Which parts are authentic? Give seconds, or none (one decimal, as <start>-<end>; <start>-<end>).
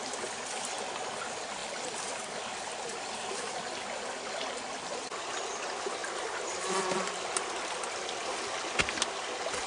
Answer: 0.0-9.7